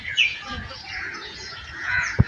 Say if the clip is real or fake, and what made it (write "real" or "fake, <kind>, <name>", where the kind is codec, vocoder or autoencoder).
fake, vocoder, Vocos